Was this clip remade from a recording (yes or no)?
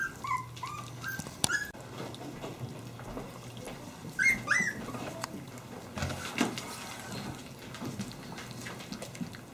no